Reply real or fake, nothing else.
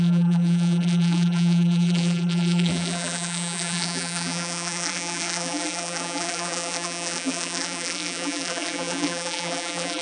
fake